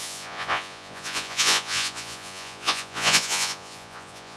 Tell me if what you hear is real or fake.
fake